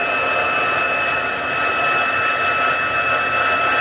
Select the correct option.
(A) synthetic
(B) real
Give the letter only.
B